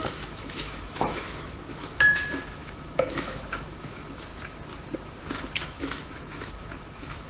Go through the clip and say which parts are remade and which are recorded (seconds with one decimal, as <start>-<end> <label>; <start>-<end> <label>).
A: 0.0-4.3 remade; 4.3-5.2 recorded; 5.2-7.3 remade